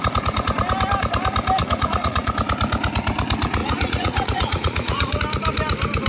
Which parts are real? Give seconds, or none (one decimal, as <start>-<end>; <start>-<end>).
0.0-1.6; 2.3-3.6; 5.2-6.1